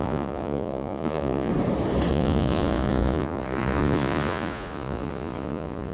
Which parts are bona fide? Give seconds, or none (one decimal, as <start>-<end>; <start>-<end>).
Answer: 1.5-2.1